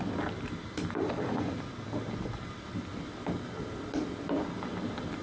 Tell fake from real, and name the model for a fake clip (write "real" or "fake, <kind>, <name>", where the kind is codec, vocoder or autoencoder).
real